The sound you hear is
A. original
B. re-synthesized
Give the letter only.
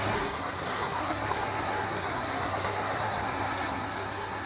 B